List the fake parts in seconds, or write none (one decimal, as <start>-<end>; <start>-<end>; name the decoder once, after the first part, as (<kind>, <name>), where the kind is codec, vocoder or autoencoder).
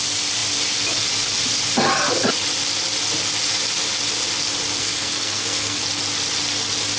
4.8-5.8 (codec, SNAC)